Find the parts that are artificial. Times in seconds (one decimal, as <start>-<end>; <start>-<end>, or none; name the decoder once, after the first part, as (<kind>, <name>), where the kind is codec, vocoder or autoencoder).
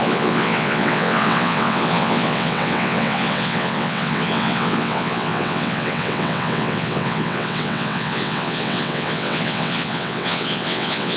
0.0-11.2 (vocoder, WaveNeXt)